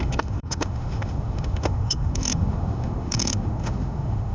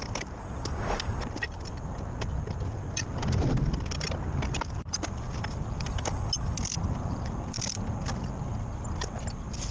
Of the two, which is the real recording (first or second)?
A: second